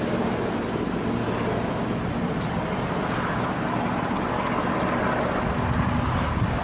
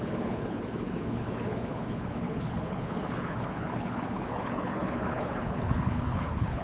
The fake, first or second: second